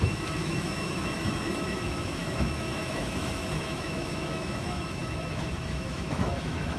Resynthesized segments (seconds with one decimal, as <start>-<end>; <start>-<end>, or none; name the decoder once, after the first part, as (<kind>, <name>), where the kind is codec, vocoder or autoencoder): 0.0-6.8 (autoencoder, DAC-VAE)